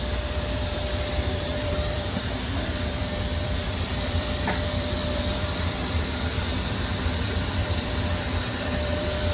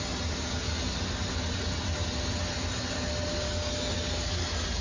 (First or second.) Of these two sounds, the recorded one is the second